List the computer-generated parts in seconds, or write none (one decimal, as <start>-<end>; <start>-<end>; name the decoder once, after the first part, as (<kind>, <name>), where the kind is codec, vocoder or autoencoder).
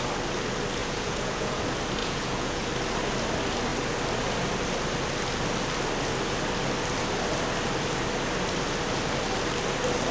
0.8-1.6 (vocoder, Vocos); 2.0-2.7